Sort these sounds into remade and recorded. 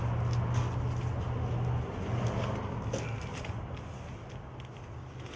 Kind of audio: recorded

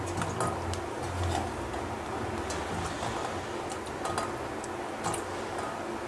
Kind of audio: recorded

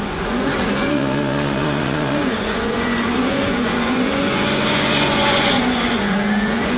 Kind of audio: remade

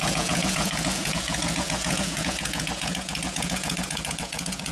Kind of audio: remade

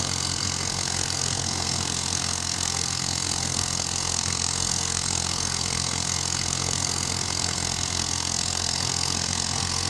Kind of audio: remade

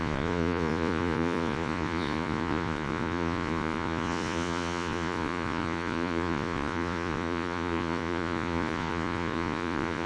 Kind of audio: remade